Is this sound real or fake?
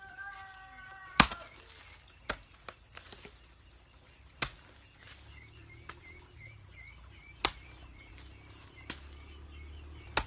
real